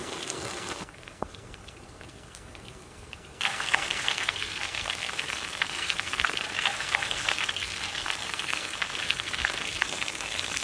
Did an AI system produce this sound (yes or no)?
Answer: yes